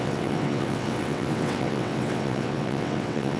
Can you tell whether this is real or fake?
fake